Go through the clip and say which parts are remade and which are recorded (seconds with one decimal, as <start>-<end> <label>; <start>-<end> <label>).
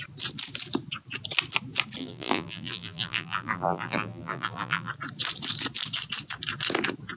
0.0-2.0 recorded; 2.0-4.9 remade; 4.9-7.2 recorded